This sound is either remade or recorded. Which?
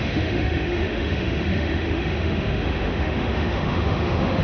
remade